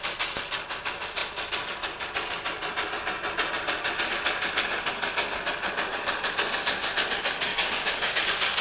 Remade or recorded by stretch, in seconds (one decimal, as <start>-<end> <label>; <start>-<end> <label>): 0.0-7.5 recorded; 7.5-8.2 remade; 8.2-8.6 recorded